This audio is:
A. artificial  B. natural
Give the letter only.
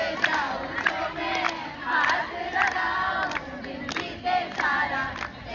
B